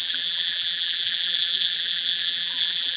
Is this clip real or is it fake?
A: fake